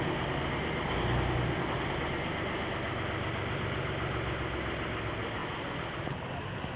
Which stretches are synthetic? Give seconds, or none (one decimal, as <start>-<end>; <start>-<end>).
none

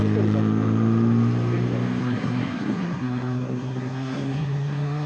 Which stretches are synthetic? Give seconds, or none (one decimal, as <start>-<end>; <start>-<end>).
2.0-5.1

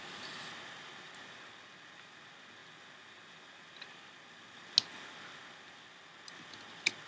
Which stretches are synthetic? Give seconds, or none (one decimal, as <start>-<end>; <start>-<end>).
none

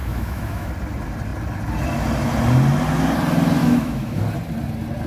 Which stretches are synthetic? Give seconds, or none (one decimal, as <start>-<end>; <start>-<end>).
0.0-0.7; 3.6-4.2

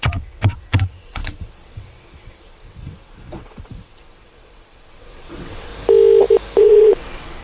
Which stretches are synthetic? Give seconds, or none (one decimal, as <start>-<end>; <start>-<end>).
0.0-5.7; 6.6-7.4

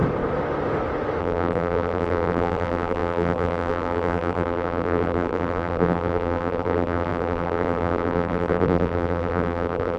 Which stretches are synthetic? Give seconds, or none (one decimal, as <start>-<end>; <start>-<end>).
1.2-10.0